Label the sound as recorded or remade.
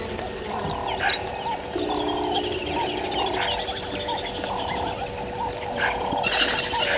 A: recorded